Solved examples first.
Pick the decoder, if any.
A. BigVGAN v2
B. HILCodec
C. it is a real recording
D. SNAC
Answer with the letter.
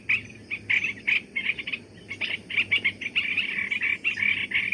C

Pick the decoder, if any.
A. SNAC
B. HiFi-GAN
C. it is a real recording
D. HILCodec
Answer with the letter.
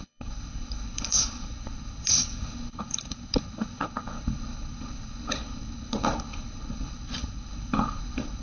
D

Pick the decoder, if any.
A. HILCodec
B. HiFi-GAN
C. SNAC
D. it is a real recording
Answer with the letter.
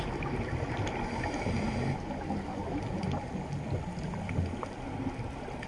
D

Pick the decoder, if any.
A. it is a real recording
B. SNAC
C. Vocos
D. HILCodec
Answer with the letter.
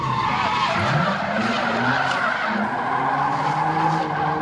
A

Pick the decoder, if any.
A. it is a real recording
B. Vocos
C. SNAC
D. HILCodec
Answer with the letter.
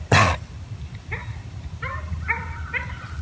A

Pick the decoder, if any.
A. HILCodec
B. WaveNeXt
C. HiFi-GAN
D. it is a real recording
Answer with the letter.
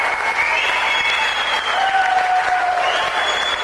D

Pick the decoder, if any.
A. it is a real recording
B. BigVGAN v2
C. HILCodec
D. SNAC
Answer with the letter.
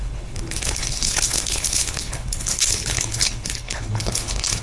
C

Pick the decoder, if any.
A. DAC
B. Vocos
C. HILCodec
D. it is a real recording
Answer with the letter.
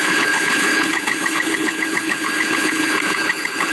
C